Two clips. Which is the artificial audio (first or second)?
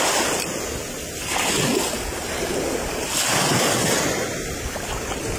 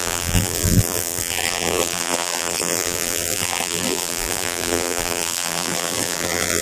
second